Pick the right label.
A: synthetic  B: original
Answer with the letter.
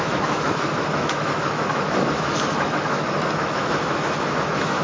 A